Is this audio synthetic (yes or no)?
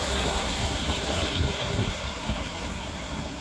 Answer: yes